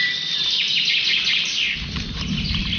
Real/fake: real